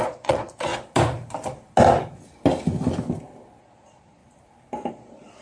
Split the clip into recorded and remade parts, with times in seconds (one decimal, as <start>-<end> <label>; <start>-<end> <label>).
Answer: 0.0-0.7 remade; 0.7-3.6 recorded; 3.6-4.2 remade; 4.2-4.9 recorded; 4.9-5.4 remade